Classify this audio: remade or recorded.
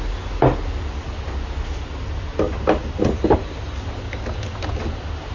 recorded